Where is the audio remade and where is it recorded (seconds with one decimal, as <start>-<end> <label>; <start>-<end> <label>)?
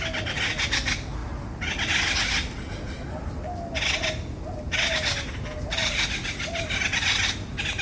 0.0-5.8 recorded; 5.8-6.6 remade; 6.6-7.8 recorded